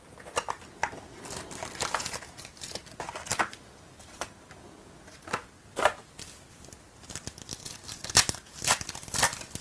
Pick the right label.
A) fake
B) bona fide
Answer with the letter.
B